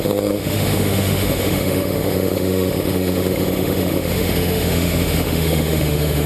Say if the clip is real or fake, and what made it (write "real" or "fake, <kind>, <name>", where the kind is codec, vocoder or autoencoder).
fake, autoencoder, DAC-VAE